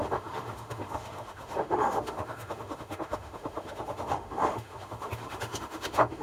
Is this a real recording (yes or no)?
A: no